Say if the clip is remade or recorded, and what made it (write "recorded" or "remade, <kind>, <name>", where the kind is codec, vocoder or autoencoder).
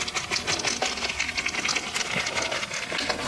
recorded